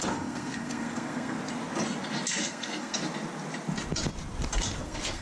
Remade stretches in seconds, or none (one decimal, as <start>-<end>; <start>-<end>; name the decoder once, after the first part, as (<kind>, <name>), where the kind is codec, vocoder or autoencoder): 0.0-1.4 (codec, SNAC); 2.3-3.0; 4.8-5.2